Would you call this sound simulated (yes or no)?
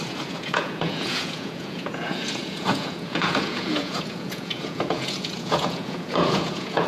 yes